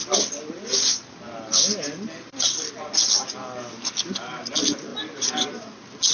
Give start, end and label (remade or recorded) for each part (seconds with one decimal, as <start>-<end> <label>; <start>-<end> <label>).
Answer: 0.0-6.1 recorded